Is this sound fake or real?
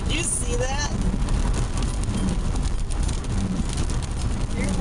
real